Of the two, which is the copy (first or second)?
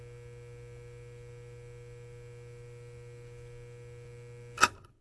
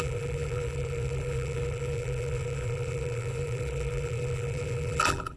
second